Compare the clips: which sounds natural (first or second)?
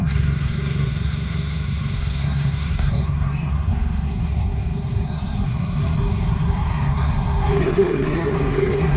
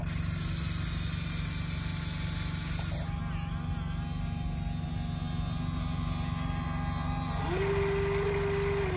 second